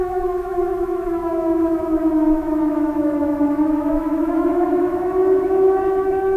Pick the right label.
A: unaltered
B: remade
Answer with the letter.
B